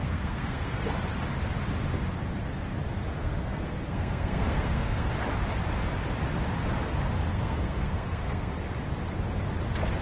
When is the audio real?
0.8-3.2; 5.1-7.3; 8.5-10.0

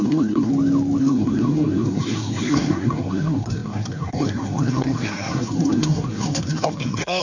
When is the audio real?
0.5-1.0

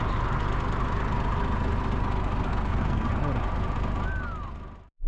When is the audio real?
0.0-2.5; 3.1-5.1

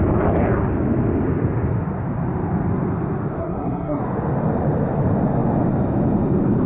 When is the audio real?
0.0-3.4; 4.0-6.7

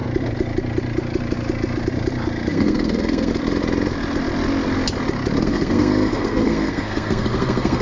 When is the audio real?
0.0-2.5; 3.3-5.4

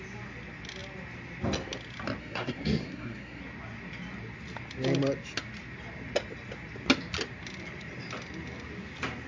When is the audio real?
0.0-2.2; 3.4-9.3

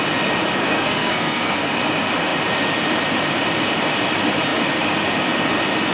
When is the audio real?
0.0-0.6; 1.7-5.9

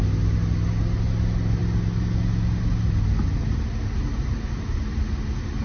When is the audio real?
0.0-5.6